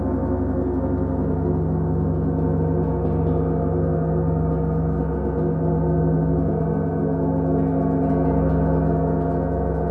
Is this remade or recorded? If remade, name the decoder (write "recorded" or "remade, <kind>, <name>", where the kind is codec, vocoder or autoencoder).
recorded